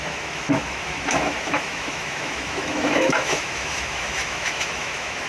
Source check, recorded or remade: remade